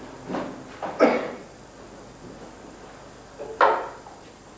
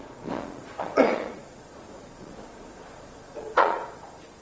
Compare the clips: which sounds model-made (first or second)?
second